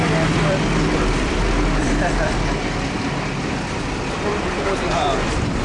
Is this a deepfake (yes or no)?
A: yes